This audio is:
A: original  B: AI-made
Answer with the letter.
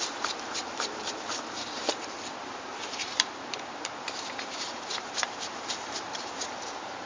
B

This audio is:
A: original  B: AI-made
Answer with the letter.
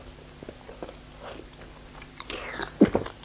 A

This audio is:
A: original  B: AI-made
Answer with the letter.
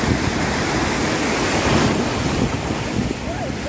A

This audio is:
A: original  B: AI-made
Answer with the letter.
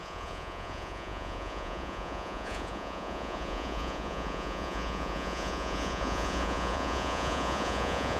B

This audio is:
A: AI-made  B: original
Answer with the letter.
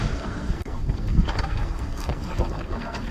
A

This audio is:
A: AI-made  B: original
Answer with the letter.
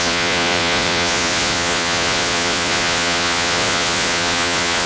A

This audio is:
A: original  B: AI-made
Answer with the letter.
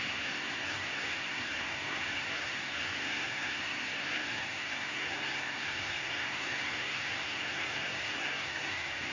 B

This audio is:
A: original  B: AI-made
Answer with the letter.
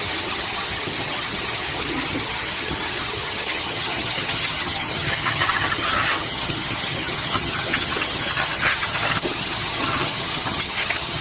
B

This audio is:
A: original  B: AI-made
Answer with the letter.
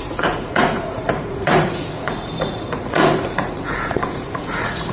B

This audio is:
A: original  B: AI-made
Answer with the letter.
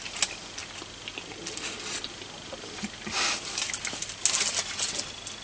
A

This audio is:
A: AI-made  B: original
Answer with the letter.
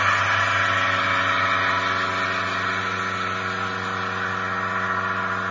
B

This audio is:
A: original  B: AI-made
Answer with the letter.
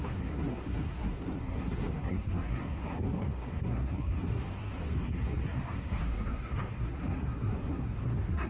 B